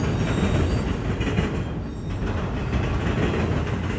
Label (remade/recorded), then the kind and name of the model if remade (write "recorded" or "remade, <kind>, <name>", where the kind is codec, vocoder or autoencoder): recorded